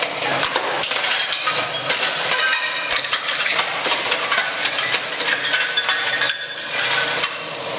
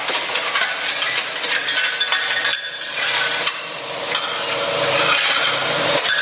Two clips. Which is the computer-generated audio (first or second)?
first